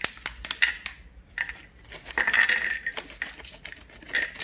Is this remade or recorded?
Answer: recorded